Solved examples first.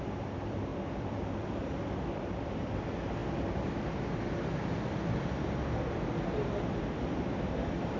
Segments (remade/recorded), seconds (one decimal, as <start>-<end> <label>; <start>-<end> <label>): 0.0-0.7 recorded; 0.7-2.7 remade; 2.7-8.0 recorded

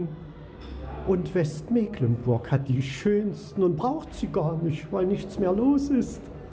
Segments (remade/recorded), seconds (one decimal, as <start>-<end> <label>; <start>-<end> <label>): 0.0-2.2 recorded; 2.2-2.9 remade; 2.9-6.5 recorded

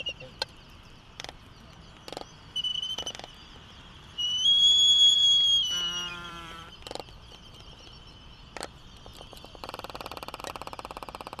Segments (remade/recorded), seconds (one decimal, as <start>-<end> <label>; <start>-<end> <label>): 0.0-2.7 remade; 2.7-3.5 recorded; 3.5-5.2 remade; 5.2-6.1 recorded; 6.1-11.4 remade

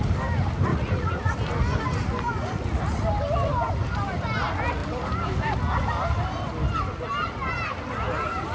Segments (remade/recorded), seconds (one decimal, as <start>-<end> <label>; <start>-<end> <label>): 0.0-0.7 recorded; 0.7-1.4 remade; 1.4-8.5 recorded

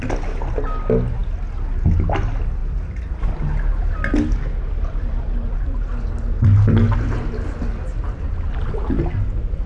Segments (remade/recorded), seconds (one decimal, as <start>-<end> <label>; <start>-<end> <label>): 0.0-9.7 recorded